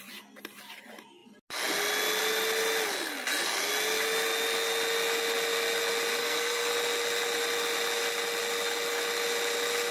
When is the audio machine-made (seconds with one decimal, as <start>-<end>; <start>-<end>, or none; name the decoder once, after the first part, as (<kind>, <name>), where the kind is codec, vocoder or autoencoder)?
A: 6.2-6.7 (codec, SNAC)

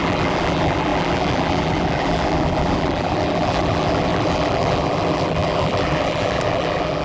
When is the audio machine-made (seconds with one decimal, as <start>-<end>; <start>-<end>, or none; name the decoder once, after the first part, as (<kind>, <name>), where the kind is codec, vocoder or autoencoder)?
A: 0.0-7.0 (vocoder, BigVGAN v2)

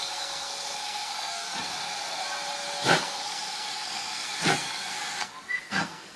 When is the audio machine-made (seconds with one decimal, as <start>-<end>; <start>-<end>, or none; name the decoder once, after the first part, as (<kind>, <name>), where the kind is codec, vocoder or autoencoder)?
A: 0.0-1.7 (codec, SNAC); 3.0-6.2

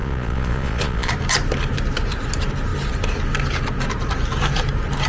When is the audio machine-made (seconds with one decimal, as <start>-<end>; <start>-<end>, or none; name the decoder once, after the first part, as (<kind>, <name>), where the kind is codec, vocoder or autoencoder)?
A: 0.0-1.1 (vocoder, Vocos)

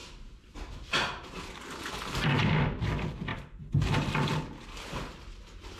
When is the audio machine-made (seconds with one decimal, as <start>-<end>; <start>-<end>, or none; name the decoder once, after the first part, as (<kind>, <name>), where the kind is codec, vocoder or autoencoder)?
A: 0.0-1.6 (vocoder, BigVGAN v2); 3.3-5.1